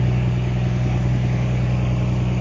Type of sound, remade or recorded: remade